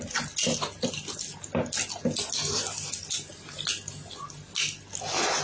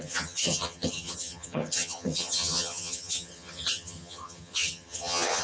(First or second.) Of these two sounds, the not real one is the second